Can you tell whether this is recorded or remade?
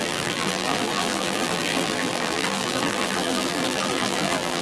remade